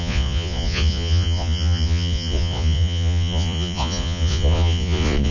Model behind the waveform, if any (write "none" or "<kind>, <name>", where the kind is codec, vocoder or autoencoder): vocoder, Vocos